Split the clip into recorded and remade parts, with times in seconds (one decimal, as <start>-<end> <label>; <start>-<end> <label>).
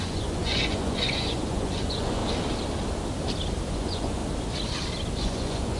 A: 0.0-2.2 remade; 2.2-3.7 recorded; 3.7-4.2 remade; 4.2-5.2 recorded; 5.2-5.8 remade